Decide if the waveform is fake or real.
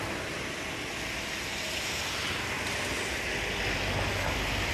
real